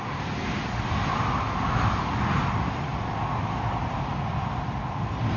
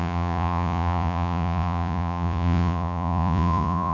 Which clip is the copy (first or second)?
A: second